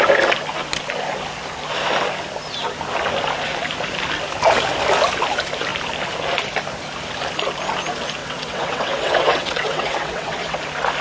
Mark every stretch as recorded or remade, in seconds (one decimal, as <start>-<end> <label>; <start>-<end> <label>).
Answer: 0.0-8.2 recorded; 8.2-10.6 remade; 10.6-11.0 recorded